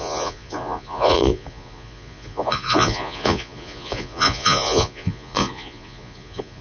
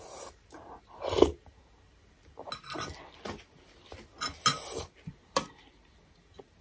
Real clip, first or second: second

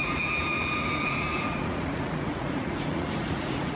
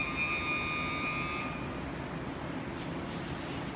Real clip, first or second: second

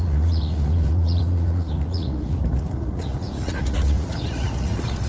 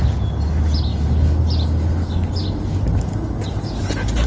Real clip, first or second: second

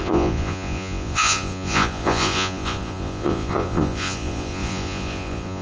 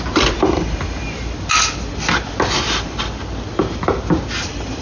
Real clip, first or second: second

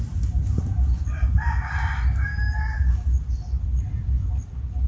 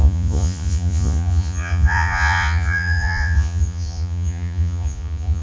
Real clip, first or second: first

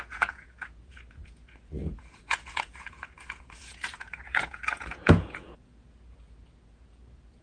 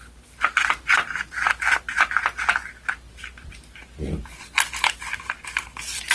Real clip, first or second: second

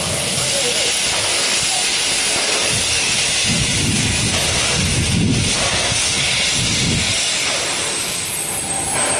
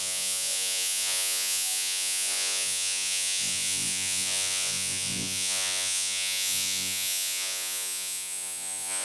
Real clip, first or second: first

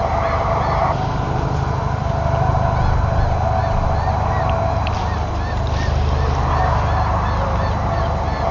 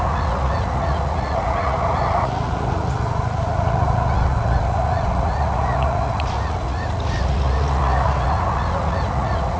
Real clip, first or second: first